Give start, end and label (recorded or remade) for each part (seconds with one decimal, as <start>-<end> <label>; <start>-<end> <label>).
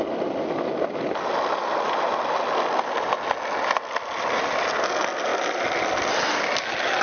0.0-7.0 recorded